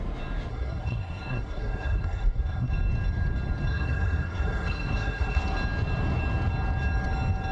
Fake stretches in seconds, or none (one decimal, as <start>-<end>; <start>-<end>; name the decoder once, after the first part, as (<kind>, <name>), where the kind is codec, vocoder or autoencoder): 0.5-2.7 (codec, SNAC); 3.7-5.4